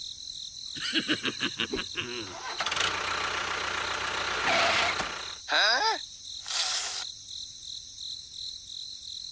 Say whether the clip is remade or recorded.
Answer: recorded